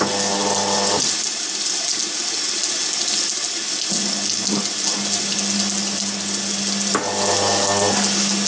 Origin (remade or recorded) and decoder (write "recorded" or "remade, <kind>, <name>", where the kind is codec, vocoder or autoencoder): recorded